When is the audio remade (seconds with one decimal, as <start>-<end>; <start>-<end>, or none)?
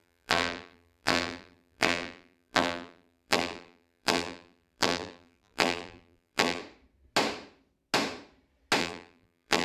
0.0-6.6; 8.8-9.6